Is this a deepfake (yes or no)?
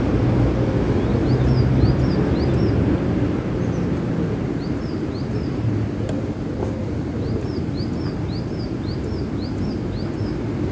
no